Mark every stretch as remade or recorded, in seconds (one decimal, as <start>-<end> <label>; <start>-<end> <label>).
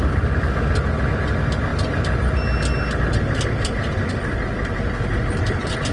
0.0-5.9 recorded